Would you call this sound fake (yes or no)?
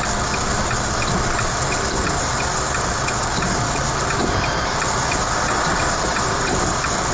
no